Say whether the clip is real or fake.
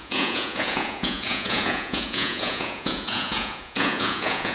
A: fake